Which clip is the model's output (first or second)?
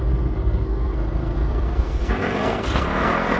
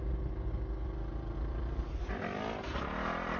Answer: first